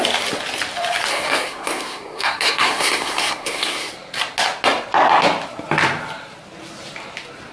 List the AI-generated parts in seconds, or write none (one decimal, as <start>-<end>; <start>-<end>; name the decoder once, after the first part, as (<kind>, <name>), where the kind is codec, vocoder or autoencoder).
1.1-3.9 (codec, SNAC)